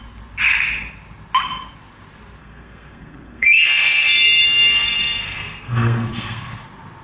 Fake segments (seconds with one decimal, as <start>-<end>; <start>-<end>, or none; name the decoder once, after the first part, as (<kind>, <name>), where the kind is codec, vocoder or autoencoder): 2.4-6.6 (codec, SNAC)